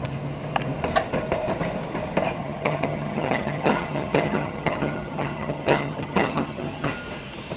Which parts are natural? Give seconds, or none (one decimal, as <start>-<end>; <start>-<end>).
0.0-2.4; 6.9-7.6